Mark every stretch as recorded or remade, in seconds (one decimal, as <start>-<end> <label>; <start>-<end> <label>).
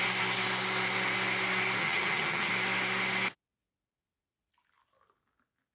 0.0-1.8 recorded; 1.8-2.5 remade; 2.5-5.7 recorded